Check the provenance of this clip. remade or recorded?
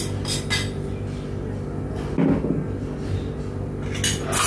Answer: recorded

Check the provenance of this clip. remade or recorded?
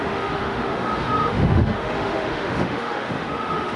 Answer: remade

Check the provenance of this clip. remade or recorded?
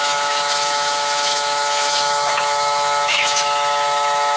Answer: remade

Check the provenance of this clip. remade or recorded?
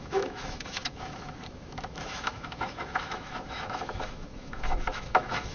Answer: remade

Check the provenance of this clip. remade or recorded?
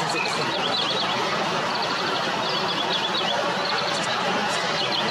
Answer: recorded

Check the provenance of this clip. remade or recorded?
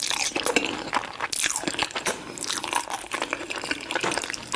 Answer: recorded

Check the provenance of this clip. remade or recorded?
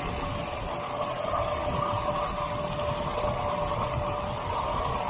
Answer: recorded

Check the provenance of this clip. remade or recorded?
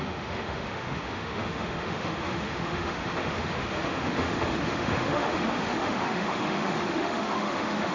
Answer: remade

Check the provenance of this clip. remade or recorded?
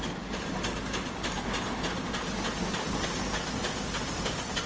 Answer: recorded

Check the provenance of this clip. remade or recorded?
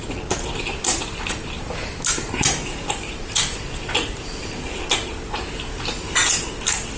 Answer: recorded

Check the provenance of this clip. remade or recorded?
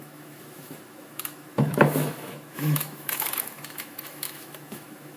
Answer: remade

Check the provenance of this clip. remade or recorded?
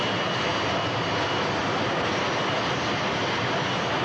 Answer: recorded